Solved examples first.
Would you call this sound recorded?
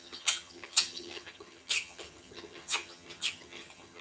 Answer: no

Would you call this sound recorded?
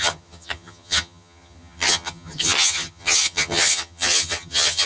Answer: no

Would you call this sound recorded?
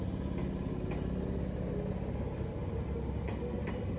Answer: yes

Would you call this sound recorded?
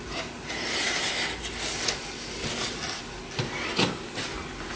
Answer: yes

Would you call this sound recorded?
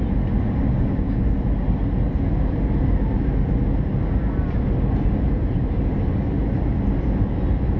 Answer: yes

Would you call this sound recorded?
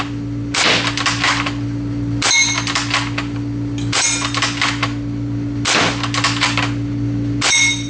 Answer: yes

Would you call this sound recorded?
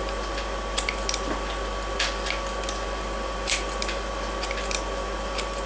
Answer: yes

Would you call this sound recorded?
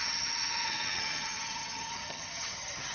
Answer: no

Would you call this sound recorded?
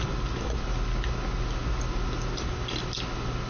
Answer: yes